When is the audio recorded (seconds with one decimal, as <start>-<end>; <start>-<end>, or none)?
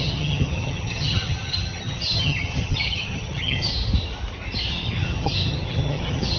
3.7-4.7